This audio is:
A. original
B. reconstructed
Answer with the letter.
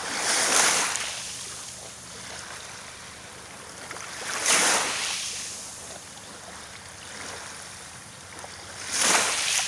A